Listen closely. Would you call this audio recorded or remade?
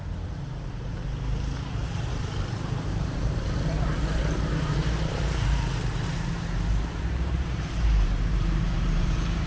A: remade